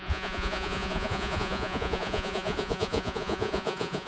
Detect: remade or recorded remade